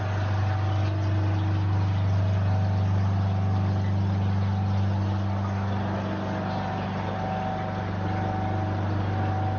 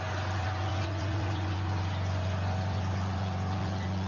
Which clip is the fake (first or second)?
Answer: second